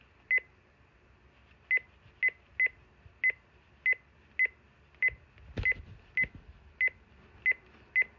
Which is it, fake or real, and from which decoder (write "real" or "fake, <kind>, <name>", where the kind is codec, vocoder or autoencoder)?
real